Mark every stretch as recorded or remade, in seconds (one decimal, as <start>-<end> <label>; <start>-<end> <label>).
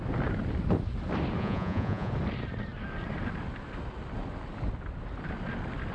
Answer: 0.0-1.4 recorded; 1.4-2.1 remade; 2.1-5.9 recorded